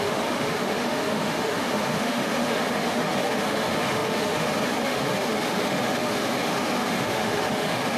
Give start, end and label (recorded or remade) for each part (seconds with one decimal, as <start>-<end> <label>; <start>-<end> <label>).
0.0-8.0 remade